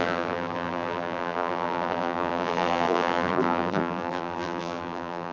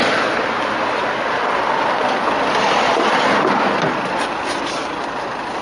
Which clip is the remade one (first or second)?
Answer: first